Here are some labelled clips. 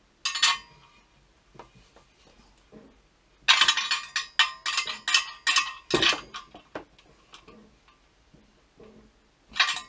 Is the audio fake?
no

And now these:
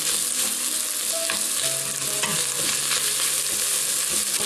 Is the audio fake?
no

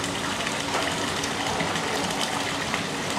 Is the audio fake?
no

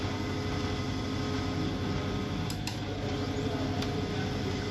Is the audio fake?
no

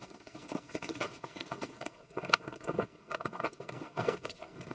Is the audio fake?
yes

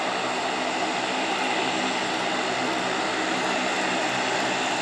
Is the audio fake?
no